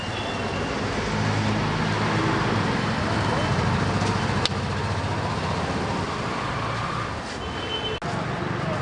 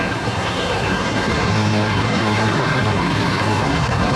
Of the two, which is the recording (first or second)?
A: first